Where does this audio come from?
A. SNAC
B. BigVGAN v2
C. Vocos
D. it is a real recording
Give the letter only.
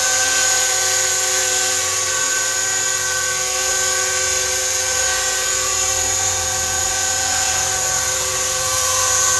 C